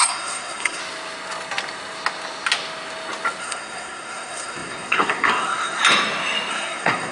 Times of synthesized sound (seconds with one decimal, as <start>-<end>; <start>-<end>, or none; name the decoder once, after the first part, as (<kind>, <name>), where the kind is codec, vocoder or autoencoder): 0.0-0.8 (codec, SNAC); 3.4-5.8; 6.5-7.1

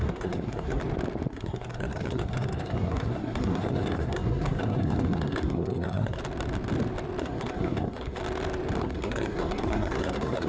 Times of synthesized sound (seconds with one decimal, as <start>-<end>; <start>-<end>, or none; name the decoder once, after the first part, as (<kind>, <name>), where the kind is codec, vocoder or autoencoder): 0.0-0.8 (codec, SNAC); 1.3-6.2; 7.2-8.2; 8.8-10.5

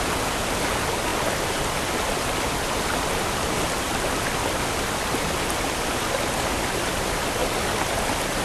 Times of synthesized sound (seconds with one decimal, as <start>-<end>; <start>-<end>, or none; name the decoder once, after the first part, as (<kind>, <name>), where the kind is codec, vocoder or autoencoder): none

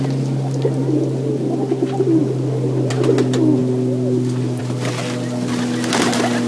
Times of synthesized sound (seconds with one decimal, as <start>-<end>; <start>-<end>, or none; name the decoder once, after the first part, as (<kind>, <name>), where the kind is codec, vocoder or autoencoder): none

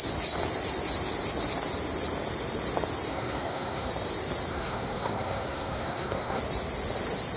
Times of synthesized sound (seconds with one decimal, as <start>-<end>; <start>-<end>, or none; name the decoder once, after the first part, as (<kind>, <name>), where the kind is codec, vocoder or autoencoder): 3.1-3.9 (codec, SNAC); 4.5-6.4

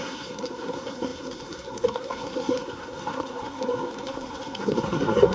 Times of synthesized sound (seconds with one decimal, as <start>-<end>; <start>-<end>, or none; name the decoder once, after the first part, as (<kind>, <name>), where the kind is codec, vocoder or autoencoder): 0.0-5.3 (codec, SNAC)

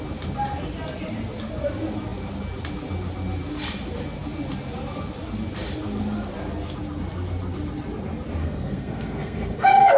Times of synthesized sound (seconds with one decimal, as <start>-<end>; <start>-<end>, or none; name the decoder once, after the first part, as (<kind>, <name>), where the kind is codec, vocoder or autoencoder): 8.4-10.0 (codec, SNAC)